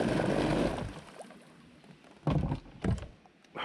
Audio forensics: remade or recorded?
recorded